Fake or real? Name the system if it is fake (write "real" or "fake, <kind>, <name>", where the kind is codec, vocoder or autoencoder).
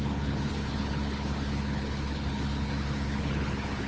fake, codec, HILCodec